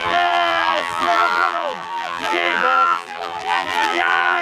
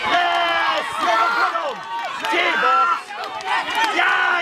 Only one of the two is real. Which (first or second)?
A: second